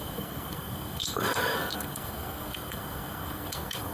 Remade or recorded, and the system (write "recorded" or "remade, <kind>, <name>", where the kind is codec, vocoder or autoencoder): remade, codec, SNAC